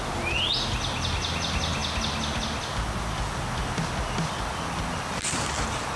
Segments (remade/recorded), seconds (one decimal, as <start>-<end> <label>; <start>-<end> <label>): 0.0-6.0 recorded